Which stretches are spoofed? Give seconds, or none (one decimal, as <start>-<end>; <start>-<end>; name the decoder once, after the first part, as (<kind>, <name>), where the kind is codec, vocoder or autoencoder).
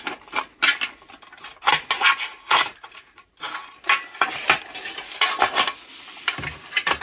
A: 2.3-3.3 (vocoder, Vocos)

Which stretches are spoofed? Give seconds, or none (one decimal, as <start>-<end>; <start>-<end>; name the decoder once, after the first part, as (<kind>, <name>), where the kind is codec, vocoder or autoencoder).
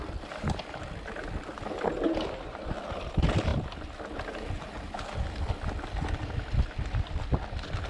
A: none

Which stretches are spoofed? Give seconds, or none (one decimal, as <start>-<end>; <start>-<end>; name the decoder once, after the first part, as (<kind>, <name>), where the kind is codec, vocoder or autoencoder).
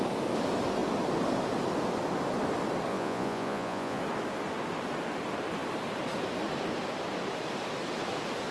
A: 2.9-4.0 (vocoder, Vocos)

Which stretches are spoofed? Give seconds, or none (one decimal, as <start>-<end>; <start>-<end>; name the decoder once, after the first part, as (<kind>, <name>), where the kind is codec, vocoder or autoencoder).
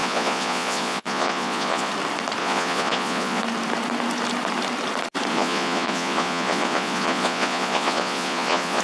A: 0.0-1.9 (vocoder, Vocos); 2.4-3.4; 5.3-8.8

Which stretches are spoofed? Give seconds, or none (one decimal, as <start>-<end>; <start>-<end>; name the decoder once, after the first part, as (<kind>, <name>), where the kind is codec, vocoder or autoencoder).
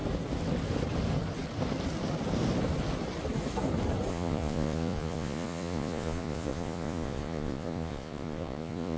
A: 4.1-9.0 (vocoder, Vocos)